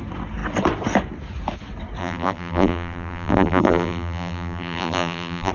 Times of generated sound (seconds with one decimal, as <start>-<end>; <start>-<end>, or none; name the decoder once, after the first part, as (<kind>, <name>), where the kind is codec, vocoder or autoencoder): 2.0-5.5 (vocoder, BigVGAN v2)